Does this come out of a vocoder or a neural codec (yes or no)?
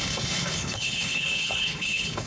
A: yes